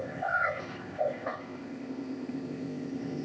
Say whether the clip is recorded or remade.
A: remade